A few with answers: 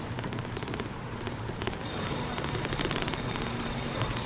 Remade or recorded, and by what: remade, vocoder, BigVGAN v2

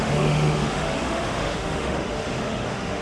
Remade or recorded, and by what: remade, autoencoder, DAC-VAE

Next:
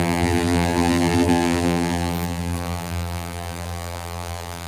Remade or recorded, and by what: remade, vocoder, BigVGAN v2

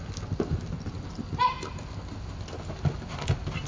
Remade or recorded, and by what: recorded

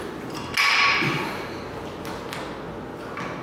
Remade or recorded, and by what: recorded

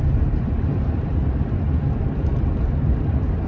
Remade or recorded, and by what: remade, vocoder, BigVGAN v2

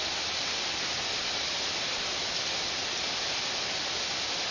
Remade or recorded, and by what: recorded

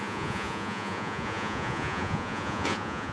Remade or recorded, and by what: remade, vocoder, Vocos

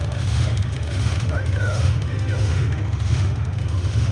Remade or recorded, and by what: remade, autoencoder, DAC-VAE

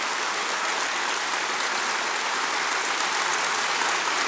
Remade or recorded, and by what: recorded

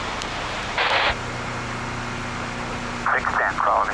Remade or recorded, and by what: recorded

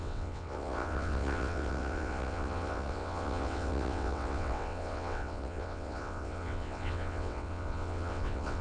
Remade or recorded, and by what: remade, vocoder, WaveNeXt